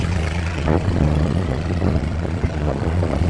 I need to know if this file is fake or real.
fake